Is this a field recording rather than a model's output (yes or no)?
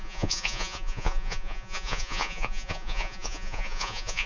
no